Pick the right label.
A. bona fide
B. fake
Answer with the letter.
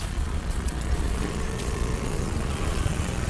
B